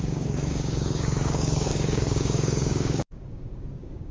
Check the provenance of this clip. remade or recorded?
remade